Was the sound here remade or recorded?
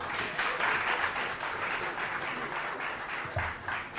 remade